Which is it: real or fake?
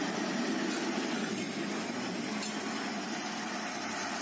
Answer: real